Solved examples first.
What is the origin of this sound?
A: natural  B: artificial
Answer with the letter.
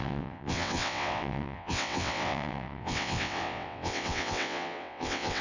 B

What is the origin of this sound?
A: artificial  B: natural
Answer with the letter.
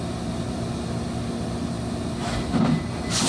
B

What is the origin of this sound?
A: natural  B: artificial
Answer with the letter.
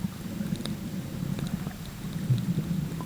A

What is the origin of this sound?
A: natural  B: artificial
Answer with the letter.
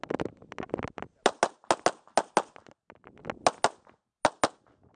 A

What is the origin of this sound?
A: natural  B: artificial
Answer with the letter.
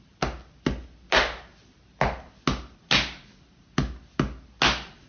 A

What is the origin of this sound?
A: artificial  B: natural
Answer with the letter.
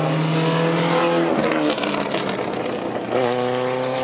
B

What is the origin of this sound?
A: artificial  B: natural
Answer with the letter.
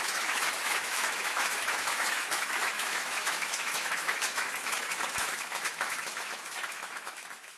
A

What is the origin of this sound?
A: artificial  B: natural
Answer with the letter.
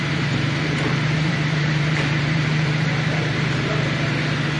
A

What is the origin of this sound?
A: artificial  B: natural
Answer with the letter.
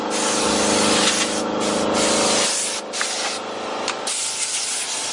B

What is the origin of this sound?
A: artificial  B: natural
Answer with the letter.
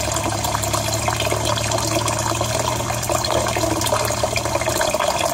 A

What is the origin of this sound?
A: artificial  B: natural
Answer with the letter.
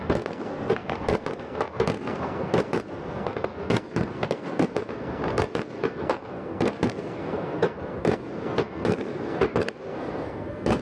A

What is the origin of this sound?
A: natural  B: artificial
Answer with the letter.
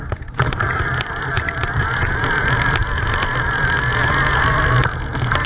A